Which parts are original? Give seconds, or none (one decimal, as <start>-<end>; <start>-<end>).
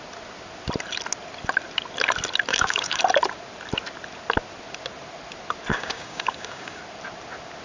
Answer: 0.0-2.5; 3.0-5.7; 6.8-7.6